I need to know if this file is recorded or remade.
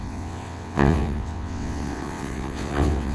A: remade